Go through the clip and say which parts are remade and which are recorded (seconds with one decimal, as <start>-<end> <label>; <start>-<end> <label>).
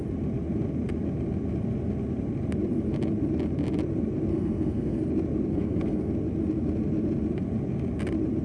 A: 0.0-4.3 recorded; 4.3-5.0 remade; 5.0-5.5 recorded; 5.5-6.1 remade; 6.1-8.4 recorded